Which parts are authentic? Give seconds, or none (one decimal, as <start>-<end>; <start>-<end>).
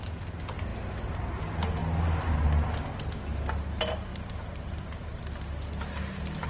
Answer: 0.0-0.7; 1.4-1.8; 3.2-6.5